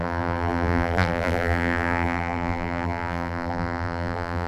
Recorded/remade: remade